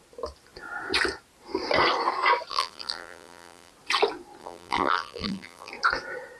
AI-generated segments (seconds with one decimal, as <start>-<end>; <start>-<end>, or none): 2.5-3.7; 4.4-5.7